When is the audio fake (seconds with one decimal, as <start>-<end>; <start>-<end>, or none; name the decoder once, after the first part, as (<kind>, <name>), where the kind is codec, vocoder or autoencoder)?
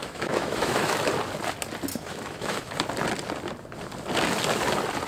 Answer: 0.0-1.1 (autoencoder, DAC-VAE); 1.9-2.7